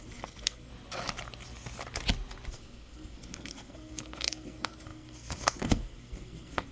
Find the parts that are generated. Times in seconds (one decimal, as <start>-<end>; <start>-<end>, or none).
0.0-0.7; 2.5-6.7